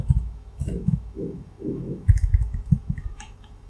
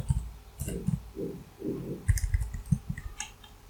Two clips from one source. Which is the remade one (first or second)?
first